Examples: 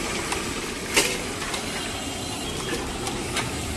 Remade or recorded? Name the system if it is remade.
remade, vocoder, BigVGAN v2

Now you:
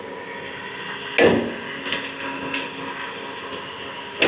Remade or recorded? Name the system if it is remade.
recorded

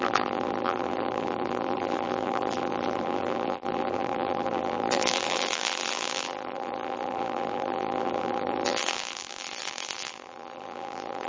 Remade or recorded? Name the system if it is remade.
remade, vocoder, BigVGAN v2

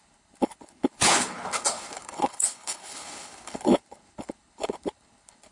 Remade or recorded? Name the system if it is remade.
remade, codec, HILCodec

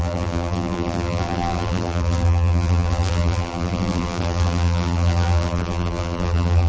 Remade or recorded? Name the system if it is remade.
remade, vocoder, BigVGAN v2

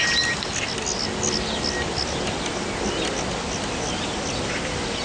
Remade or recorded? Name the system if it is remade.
recorded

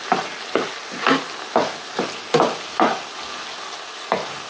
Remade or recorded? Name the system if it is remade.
recorded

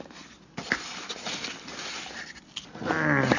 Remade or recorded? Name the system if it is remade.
recorded